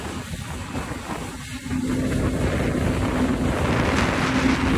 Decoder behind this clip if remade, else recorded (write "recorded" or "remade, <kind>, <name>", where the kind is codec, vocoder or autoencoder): recorded